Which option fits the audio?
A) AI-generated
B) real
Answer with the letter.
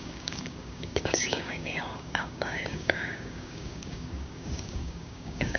A